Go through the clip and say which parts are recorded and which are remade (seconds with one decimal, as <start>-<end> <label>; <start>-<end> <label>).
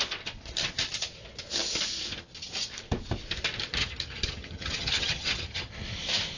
0.0-3.8 recorded; 3.8-5.7 remade; 5.7-6.4 recorded